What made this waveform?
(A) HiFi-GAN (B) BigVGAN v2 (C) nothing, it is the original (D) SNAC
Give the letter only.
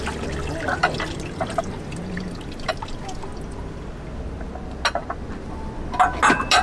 C